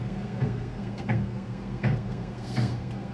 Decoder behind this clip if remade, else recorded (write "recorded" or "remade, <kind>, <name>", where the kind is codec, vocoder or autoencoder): remade, codec, SNAC